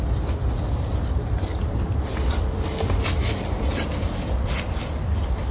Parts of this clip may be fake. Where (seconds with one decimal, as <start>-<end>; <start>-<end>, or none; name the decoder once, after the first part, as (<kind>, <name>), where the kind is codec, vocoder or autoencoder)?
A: 1.5-2.0 (vocoder, BigVGAN v2)